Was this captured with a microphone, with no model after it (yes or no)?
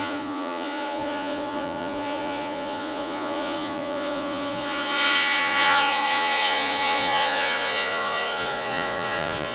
no